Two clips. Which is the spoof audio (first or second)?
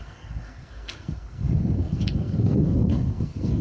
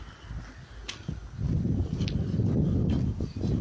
first